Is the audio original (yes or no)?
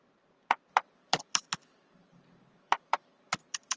no